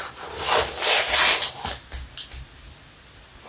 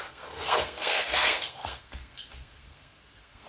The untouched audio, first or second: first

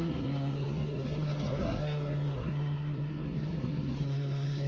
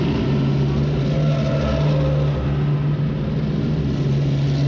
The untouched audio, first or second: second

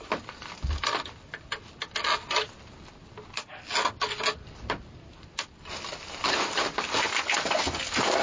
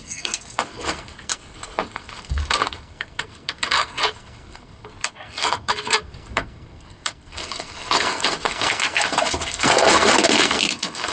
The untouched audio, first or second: first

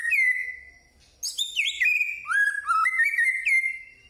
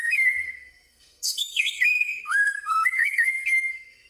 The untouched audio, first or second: first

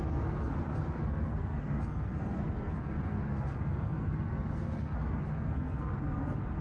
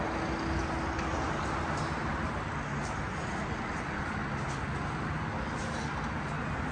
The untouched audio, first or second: second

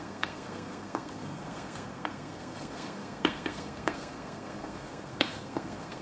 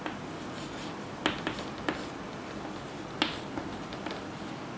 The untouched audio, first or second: second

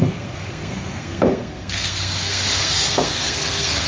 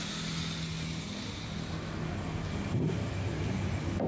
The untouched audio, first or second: second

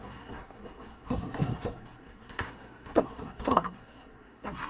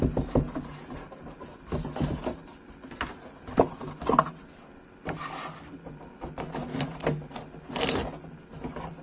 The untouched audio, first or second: second